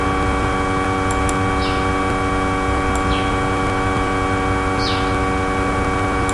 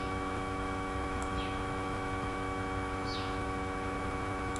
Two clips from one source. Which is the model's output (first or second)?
second